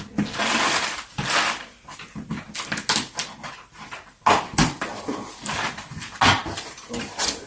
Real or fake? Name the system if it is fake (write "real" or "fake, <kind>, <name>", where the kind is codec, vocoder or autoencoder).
real